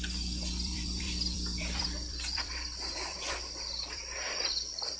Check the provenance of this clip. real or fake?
fake